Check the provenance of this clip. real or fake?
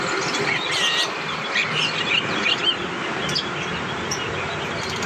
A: real